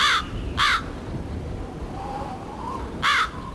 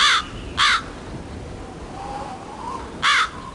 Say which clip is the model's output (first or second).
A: first